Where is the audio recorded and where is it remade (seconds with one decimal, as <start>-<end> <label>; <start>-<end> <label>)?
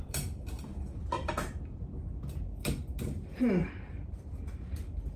0.0-5.2 recorded